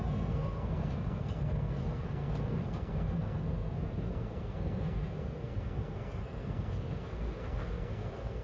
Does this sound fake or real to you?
fake